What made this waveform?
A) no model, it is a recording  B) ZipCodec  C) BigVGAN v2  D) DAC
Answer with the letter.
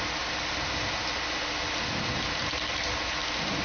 A